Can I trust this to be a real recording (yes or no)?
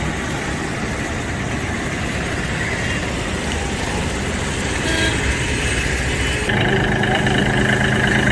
yes